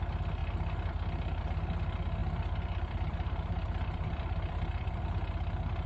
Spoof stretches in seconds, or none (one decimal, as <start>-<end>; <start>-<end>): 2.2-5.0